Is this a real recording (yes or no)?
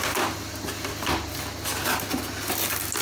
yes